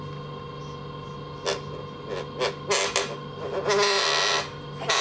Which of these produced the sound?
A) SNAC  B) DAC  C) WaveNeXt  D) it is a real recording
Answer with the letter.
D